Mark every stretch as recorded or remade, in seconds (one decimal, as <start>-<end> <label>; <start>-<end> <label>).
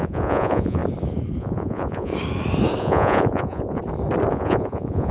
0.0-0.8 remade; 0.8-1.4 recorded; 1.4-2.1 remade; 2.1-2.8 recorded; 2.8-3.8 remade; 3.8-4.3 recorded; 4.3-5.1 remade